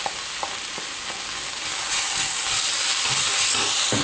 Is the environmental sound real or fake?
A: real